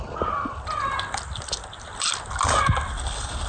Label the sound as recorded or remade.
recorded